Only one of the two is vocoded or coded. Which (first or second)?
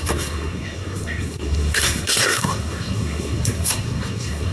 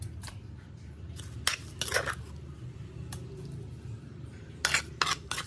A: first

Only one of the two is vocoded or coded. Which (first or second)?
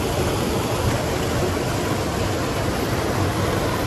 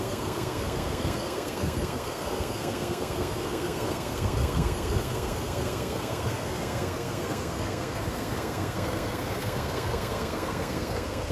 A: second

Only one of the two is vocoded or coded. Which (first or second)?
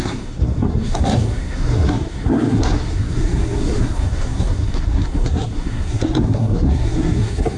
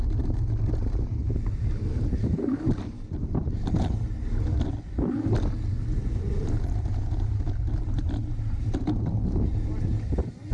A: first